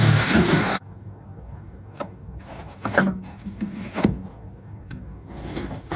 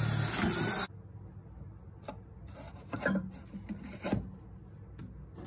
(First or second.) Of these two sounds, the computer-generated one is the first